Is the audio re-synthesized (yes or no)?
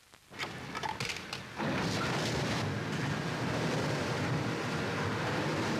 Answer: no